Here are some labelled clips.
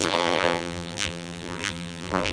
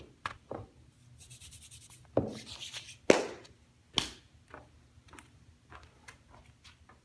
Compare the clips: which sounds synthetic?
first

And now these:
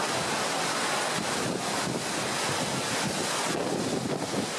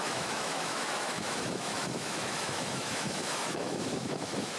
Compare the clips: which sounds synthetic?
second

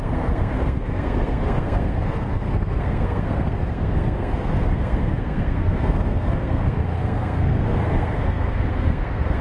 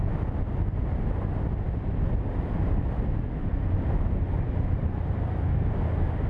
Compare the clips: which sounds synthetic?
first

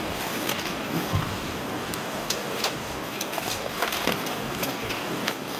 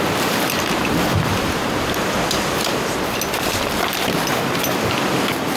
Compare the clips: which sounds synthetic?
first